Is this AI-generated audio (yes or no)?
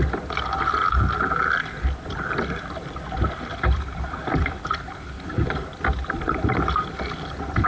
yes